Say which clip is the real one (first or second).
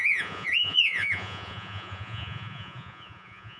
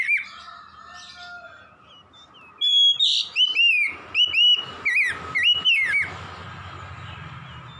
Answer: second